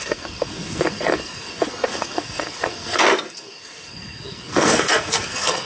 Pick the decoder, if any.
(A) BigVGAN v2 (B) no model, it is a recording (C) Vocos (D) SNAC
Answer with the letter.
D